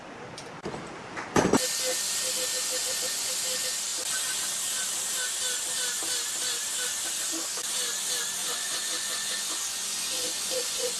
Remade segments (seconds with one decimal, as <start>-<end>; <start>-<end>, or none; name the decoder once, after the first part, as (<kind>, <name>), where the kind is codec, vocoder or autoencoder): 2.8-3.3 (vocoder, Vocos); 8.4-11.0